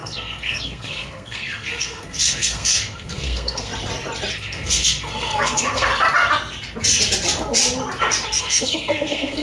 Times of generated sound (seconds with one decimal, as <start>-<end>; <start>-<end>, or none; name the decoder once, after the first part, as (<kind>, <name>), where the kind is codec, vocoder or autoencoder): 0.0-3.7 (codec, SNAC); 4.3-5.9; 8.4-9.4